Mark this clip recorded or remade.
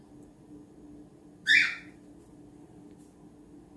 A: recorded